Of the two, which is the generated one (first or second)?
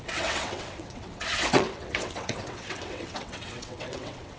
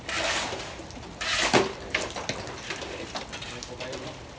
first